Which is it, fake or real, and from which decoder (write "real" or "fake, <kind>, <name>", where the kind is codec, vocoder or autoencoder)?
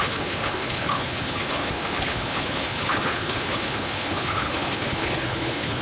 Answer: fake, codec, HILCodec